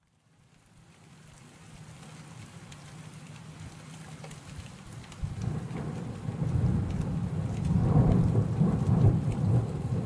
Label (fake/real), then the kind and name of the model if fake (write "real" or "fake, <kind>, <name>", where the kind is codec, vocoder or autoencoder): fake, vocoder, BigVGAN v2